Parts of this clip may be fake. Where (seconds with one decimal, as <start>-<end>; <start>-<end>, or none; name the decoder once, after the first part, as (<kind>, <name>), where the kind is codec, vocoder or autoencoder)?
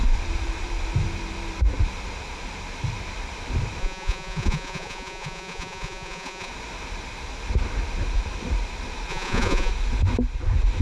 3.8-6.5 (vocoder, Vocos); 9.1-9.7